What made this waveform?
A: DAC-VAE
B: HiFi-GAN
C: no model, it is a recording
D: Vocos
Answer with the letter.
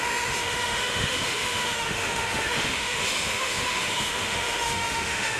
A